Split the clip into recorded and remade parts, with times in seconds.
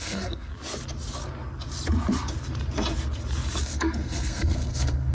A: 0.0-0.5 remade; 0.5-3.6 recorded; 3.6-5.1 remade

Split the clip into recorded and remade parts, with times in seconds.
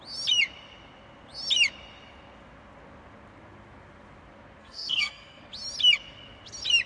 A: 0.0-4.6 recorded; 4.6-5.4 remade; 5.4-6.9 recorded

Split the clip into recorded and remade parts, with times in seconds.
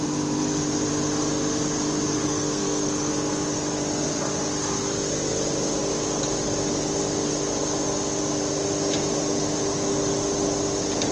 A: 0.0-2.1 recorded; 2.1-3.1 remade; 3.1-11.1 recorded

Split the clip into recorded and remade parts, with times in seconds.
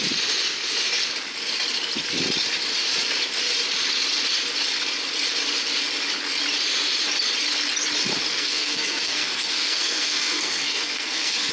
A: 0.0-8.3 recorded; 8.3-11.5 remade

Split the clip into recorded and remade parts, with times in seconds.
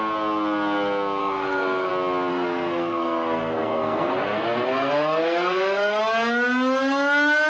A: 0.0-1.2 recorded; 1.2-1.9 remade; 1.9-2.3 recorded; 2.3-6.0 remade; 6.0-7.5 recorded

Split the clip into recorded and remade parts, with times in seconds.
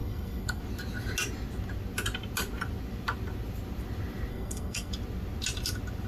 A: 0.0-0.6 remade; 0.6-4.3 recorded; 4.3-4.9 remade; 4.9-6.1 recorded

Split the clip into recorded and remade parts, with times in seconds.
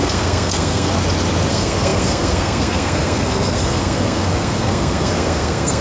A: 0.0-0.9 remade; 0.9-1.5 recorded; 1.5-5.8 remade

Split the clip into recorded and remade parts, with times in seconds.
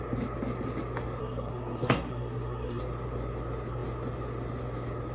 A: 0.0-1.2 recorded; 1.2-2.8 remade; 2.8-5.1 recorded